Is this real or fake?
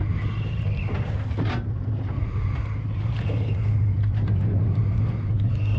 real